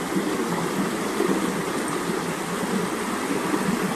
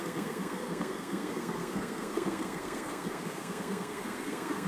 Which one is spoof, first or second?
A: second